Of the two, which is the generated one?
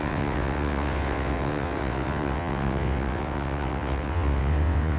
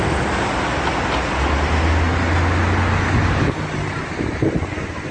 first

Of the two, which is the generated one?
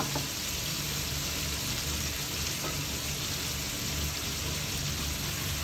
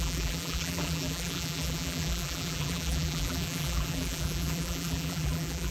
second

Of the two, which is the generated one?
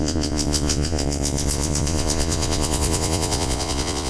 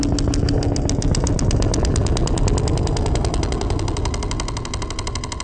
first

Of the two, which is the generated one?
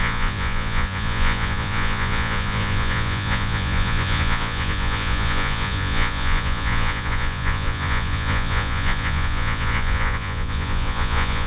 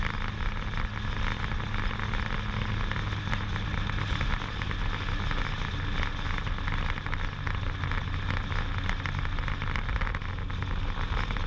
first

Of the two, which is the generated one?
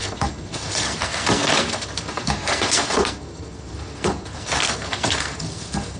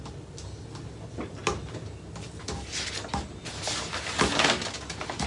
first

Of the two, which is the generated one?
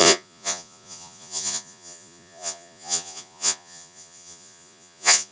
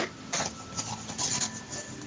first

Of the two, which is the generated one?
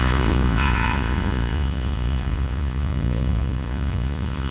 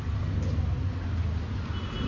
first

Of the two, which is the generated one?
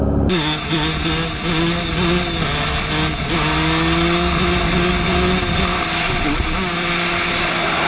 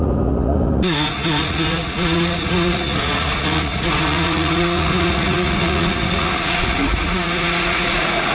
second